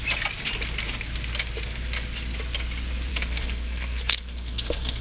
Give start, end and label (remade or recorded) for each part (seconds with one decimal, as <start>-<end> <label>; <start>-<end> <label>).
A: 0.0-3.1 recorded; 3.1-5.0 remade